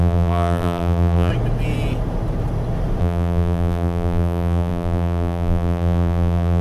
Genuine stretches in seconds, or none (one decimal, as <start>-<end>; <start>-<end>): 1.3-3.0